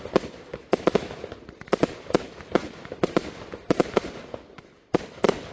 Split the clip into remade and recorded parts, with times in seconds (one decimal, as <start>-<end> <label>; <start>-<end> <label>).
0.0-0.5 recorded; 0.5-1.3 remade; 1.3-5.5 recorded